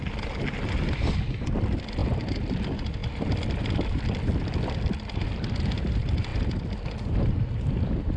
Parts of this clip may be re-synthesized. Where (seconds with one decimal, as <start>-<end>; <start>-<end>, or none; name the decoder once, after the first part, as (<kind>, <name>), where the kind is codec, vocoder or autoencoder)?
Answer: none